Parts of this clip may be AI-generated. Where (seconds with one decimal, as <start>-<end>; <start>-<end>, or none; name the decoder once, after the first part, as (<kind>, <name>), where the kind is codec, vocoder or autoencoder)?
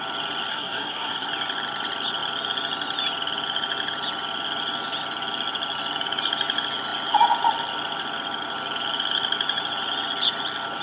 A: 0.5-1.3 (codec, SNAC)